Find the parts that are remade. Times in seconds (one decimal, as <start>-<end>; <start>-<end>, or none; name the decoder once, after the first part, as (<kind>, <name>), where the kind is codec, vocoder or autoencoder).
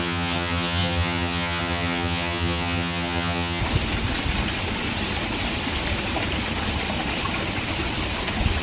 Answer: 0.0-3.6 (vocoder, HiFi-GAN)